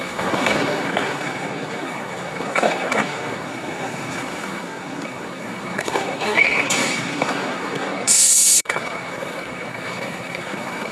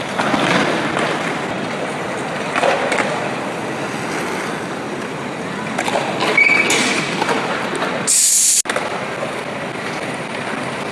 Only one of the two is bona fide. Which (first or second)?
second